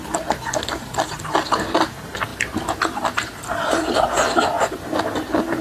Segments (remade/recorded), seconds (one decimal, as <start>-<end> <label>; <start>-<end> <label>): 0.0-5.6 recorded